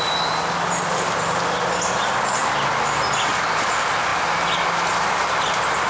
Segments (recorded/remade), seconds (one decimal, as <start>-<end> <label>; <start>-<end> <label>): 0.0-5.9 recorded